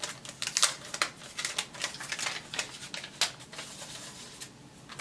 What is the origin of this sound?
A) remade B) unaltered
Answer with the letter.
B